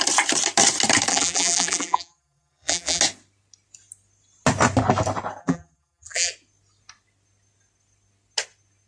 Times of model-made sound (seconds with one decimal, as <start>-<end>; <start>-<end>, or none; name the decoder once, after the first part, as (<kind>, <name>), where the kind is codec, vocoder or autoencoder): 1.1-3.0 (vocoder, BigVGAN v2); 5.4-6.3